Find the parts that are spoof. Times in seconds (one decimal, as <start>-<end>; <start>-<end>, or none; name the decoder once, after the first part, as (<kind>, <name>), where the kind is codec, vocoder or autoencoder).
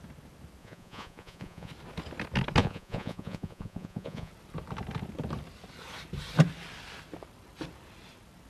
0.6-1.7 (vocoder, Vocos); 2.6-4.3